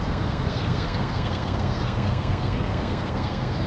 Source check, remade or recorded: remade